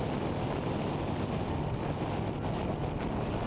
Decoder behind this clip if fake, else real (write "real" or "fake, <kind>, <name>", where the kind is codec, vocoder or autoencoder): real